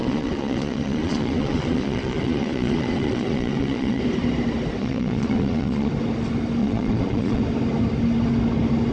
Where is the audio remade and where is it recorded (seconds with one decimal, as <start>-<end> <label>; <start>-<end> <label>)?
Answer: 0.0-4.0 remade; 4.0-4.8 recorded; 4.8-5.9 remade; 5.9-6.6 recorded; 6.6-7.4 remade; 7.4-8.9 recorded